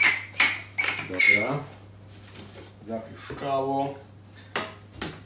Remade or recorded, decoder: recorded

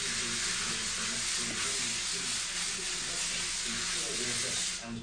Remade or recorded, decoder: recorded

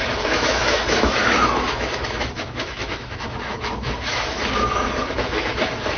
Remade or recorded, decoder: remade, autoencoder, DAC-VAE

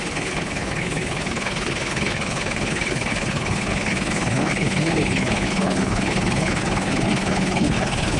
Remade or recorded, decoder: remade, codec, HILCodec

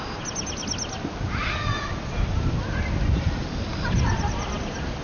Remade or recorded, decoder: recorded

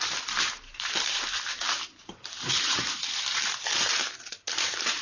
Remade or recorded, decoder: remade, vocoder, BigVGAN v2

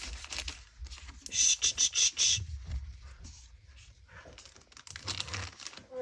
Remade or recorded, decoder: recorded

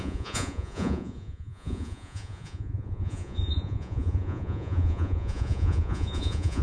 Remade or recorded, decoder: remade, vocoder, Vocos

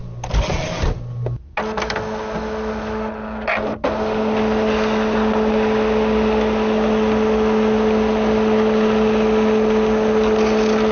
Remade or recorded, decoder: recorded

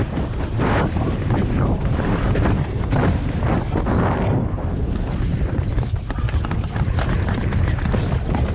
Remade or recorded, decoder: recorded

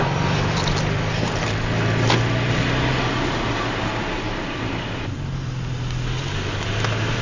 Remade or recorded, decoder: recorded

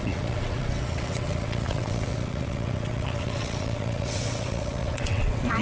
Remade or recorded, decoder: remade, vocoder, WaveNeXt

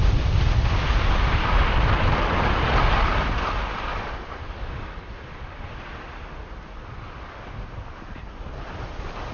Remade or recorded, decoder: recorded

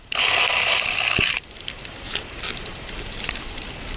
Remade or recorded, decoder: remade, vocoder, BigVGAN v2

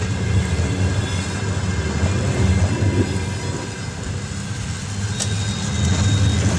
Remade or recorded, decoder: recorded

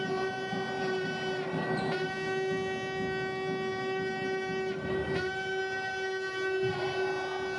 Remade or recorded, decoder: recorded